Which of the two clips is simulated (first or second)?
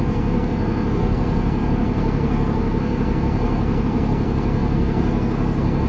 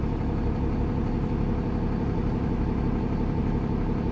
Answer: first